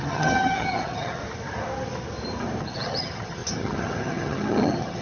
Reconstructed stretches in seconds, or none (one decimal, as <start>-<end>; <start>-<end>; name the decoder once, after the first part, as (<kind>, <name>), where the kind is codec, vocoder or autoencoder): 0.0-1.2 (vocoder, HiFi-GAN); 2.6-5.0